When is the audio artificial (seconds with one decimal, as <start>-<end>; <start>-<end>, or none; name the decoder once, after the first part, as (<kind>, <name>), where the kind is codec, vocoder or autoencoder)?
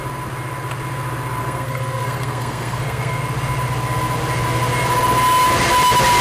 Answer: 1.4-3.2 (codec, SNAC)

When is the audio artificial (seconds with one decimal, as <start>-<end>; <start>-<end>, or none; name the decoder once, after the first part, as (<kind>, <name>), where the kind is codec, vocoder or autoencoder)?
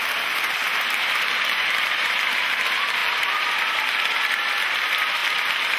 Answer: 0.6-2.4 (vocoder, BigVGAN v2); 3.0-3.8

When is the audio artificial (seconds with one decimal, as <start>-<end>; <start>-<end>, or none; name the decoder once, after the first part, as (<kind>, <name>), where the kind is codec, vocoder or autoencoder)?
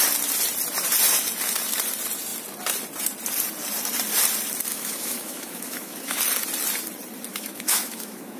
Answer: 4.7-6.2 (autoencoder, DAC-VAE); 7.3-8.4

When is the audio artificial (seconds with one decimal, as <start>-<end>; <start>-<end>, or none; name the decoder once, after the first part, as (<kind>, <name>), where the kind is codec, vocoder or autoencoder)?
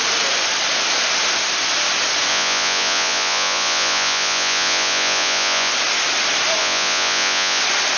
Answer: 2.3-5.7 (vocoder, Vocos); 6.6-7.6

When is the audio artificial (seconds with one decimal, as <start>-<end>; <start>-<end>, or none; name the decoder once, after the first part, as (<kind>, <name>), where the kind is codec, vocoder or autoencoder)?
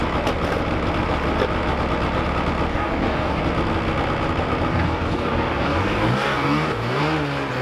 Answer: 2.7-3.4 (codec, DAC); 4.7-7.0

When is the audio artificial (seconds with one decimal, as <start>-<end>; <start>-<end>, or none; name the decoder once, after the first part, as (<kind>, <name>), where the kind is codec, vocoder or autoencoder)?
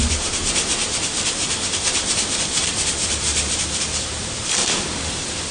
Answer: 0.0-0.8 (vocoder, BigVGAN v2); 1.8-5.5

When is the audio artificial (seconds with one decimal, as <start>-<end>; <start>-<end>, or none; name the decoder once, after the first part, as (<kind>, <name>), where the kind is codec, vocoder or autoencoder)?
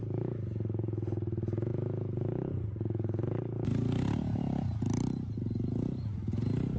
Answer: none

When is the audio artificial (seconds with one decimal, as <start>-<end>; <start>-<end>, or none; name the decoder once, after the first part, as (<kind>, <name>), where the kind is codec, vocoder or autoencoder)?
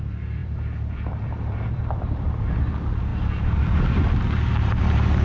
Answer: 0.4-2.5 (vocoder, BigVGAN v2)